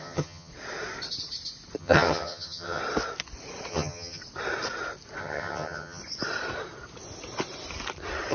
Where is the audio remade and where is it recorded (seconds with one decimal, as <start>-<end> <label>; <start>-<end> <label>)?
0.0-0.5 remade; 0.5-1.8 recorded; 1.8-2.8 remade; 2.8-3.7 recorded; 3.7-4.2 remade; 4.2-5.2 recorded; 5.2-6.0 remade; 6.0-8.3 recorded